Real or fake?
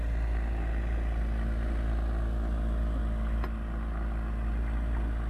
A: real